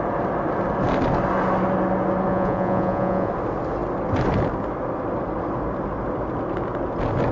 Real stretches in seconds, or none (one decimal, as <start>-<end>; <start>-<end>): 0.0-2.3; 3.3-7.3